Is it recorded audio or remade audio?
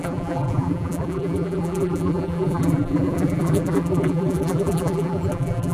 remade